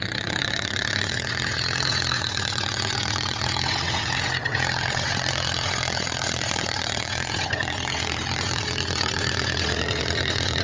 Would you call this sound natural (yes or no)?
no